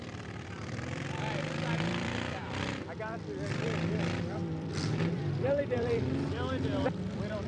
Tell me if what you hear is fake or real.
fake